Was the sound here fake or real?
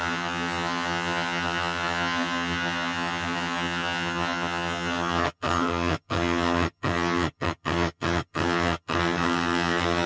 fake